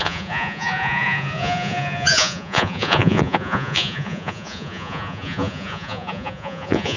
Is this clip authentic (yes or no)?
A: no